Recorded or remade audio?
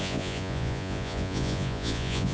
remade